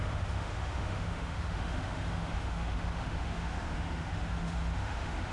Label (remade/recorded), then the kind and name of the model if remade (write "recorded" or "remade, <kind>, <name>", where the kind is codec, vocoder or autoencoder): remade, autoencoder, DAC-VAE